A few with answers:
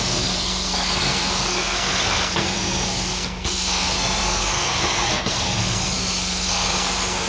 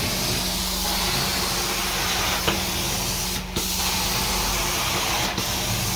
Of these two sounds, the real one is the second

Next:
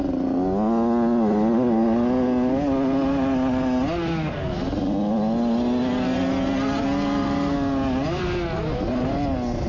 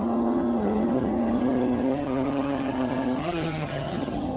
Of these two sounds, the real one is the first